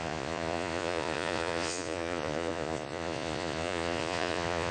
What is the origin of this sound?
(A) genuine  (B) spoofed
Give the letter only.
B